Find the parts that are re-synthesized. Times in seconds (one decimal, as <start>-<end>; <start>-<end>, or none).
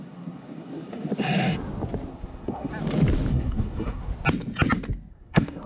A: 0.0-1.1; 2.1-2.7; 3.3-4.1; 5.1-5.7